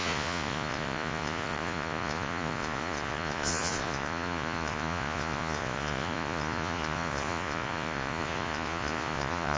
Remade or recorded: remade